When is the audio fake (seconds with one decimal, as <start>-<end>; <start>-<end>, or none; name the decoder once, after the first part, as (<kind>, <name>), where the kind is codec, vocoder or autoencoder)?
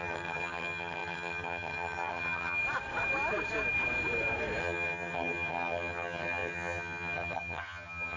0.0-2.6 (vocoder, HiFi-GAN); 4.6-8.2